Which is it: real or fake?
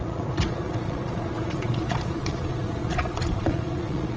fake